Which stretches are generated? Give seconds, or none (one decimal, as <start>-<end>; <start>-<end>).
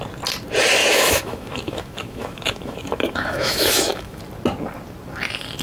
0.8-4.2